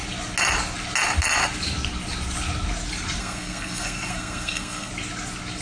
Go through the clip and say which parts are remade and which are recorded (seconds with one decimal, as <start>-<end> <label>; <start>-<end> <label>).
0.0-3.2 recorded; 3.2-4.9 remade; 4.9-5.6 recorded